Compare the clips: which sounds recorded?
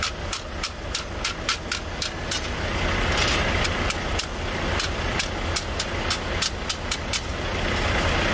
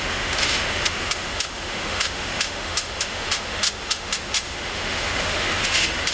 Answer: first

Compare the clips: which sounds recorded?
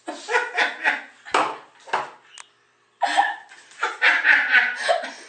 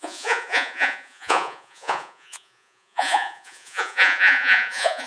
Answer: first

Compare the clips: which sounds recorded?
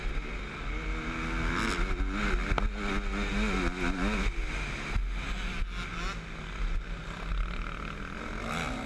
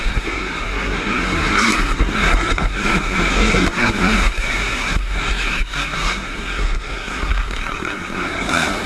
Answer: first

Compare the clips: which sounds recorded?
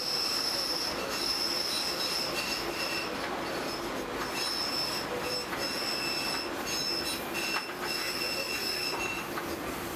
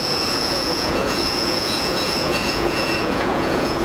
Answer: first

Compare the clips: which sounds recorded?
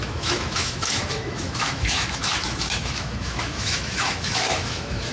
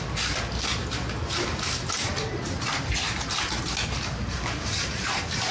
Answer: second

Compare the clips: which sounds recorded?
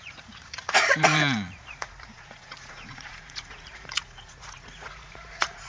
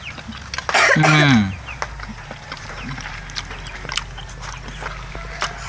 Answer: second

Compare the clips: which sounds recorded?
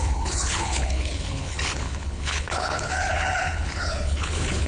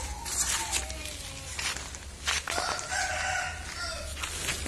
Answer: second